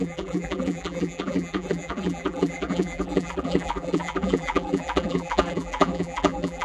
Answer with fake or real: fake